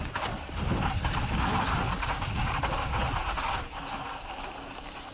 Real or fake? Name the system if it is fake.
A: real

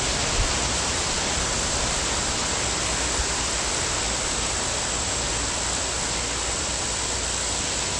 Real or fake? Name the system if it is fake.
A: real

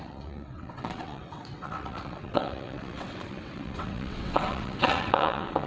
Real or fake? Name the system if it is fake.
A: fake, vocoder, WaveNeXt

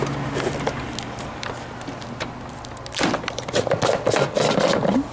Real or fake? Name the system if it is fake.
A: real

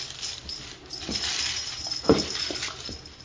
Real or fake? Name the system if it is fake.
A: real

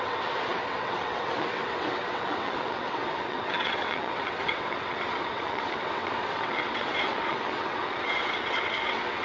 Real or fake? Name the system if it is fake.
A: fake, vocoder, WaveNeXt